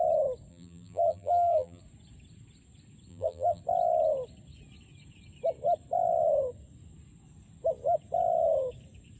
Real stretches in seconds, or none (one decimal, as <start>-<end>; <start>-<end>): 0.0-0.5; 1.8-3.1; 3.6-9.2